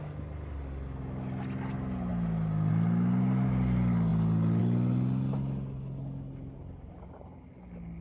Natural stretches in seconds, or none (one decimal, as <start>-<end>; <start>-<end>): 0.0-8.0